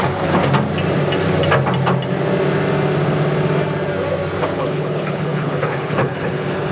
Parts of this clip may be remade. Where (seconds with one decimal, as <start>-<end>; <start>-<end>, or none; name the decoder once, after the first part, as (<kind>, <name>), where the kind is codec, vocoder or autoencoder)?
0.0-0.4 (codec, HILCodec); 4.4-6.7